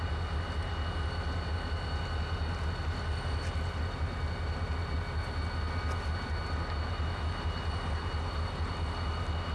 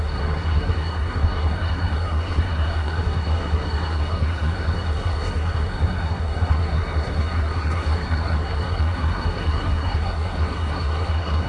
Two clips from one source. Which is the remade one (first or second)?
second